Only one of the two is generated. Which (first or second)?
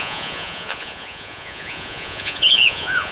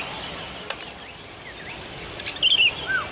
first